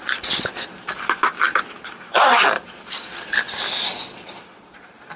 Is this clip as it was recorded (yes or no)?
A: no